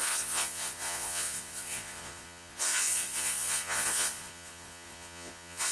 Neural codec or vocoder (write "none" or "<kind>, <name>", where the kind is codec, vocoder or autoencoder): vocoder, Vocos